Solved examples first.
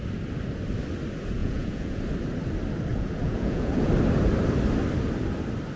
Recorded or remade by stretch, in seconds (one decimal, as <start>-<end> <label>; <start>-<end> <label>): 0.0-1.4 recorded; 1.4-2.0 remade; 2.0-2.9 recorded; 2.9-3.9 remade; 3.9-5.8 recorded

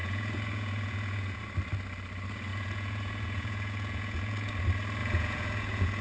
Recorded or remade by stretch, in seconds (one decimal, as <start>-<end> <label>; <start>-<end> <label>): 0.0-1.4 remade; 1.4-2.5 recorded; 2.5-4.5 remade; 4.5-5.0 recorded; 5.0-6.0 remade

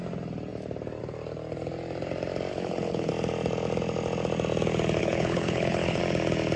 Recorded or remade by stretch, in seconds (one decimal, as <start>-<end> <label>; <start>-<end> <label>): 0.0-2.5 recorded; 2.5-3.1 remade; 3.1-5.0 recorded; 5.0-6.0 remade; 6.0-6.6 recorded

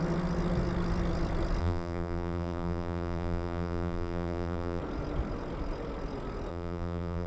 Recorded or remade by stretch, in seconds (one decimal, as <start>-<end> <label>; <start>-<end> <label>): 0.0-1.6 recorded; 1.6-4.8 remade; 4.8-6.5 recorded; 6.5-7.3 remade

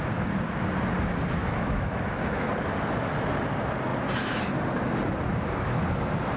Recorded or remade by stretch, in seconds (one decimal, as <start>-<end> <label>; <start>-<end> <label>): 0.0-1.4 recorded; 1.4-2.5 remade; 2.5-6.4 recorded

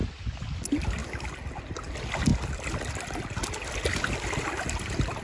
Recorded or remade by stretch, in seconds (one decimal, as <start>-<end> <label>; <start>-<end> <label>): 0.0-5.2 recorded

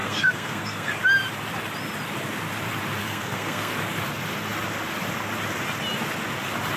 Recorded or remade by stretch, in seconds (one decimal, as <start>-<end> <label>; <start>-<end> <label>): 0.0-1.0 remade; 1.0-3.0 recorded; 3.0-3.7 remade; 3.7-6.8 recorded